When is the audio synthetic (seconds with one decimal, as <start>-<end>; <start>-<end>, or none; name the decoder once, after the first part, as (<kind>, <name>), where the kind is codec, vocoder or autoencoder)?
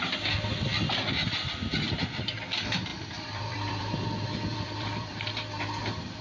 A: 2.9-3.9 (vocoder, BigVGAN v2); 4.5-5.3